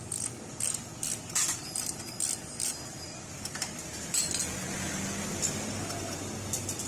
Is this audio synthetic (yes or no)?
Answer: no